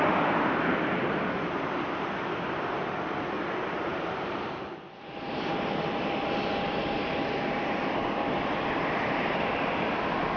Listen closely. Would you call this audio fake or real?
fake